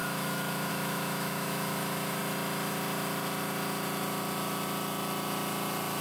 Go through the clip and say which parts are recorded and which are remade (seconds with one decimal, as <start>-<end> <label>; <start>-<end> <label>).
0.0-2.2 remade; 2.2-6.0 recorded